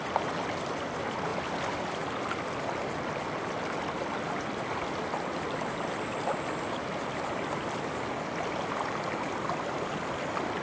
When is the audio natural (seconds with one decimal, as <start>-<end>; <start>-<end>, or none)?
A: 0.0-10.6